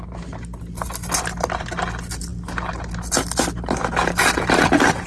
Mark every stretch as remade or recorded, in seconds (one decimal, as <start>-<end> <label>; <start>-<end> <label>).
0.0-5.1 recorded